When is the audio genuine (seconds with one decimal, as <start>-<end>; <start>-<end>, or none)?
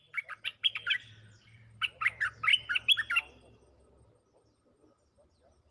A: 2.5-5.3